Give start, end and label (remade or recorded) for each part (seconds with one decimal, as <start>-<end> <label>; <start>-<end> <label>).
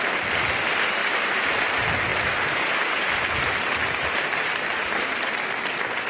0.0-1.0 recorded; 1.0-1.7 remade; 1.7-2.1 recorded; 2.1-5.1 remade; 5.1-6.1 recorded